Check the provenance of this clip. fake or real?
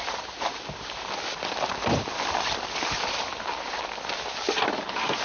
real